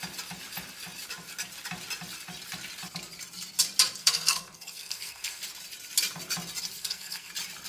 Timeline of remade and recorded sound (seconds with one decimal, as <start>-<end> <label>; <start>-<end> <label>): 0.0-4.0 recorded; 4.0-5.4 remade; 5.4-6.8 recorded; 6.8-7.3 remade; 7.3-7.7 recorded